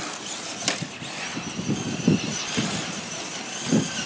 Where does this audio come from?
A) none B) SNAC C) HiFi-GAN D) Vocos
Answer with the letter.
A